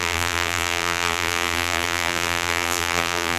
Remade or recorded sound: remade